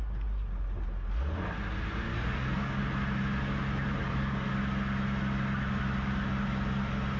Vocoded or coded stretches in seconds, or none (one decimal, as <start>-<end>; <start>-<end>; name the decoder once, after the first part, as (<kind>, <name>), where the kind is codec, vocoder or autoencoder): 2.1-2.8 (codec, DAC); 4.0-4.5

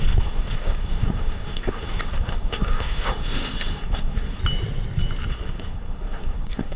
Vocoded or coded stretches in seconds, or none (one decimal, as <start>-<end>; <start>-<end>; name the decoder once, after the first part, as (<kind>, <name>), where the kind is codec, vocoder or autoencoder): 0.0-4.4 (codec, SNAC); 5.3-6.8

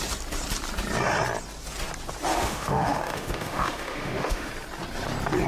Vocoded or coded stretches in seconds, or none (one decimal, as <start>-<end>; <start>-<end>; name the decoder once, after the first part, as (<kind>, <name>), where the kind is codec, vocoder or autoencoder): 2.3-4.5 (autoencoder, DAC-VAE)

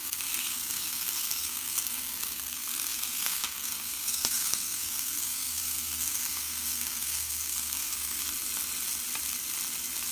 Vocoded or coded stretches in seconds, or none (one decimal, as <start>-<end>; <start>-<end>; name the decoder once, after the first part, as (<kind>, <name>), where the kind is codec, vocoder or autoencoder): 0.0-8.2 (codec, SNAC)

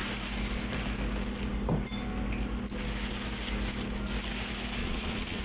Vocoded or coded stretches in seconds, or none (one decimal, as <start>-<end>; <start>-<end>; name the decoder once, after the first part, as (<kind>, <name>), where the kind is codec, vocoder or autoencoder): 4.8-5.4 (vocoder, Vocos)

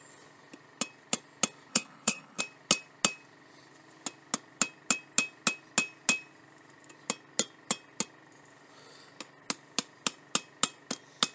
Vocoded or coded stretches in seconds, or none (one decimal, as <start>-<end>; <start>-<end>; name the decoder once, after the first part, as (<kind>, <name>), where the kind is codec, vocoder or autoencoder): 1.7-2.4 (codec, HILCodec)

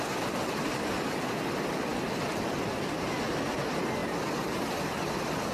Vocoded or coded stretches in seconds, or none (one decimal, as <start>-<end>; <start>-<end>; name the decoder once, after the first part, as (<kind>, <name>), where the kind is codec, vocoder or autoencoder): none

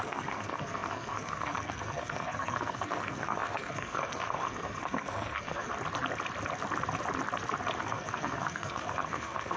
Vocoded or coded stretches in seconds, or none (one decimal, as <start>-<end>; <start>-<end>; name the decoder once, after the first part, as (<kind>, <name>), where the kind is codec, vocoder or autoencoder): 0.0-5.7 (codec, SNAC); 7.8-9.6